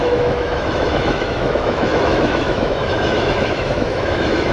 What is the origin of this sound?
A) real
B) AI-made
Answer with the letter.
B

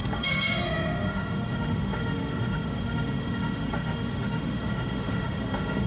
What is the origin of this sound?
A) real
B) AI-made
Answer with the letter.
B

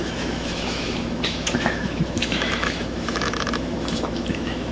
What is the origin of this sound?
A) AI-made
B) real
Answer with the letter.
A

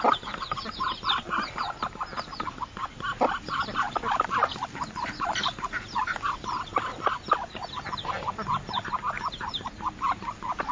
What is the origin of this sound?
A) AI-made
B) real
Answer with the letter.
B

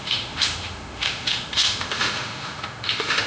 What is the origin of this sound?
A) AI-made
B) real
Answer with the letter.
A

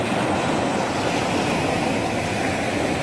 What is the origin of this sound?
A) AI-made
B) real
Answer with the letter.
B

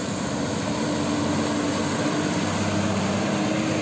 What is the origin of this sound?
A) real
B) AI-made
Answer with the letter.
A